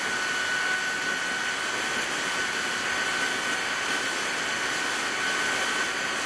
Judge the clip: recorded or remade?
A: recorded